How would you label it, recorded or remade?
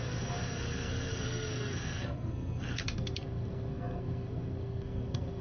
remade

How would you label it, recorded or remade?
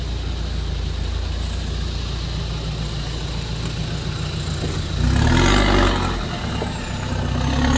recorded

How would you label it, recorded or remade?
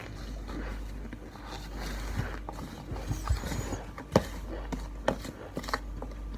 recorded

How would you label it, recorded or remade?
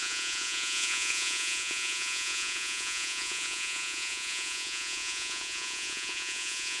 remade